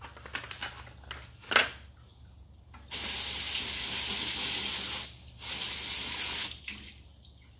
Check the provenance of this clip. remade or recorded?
recorded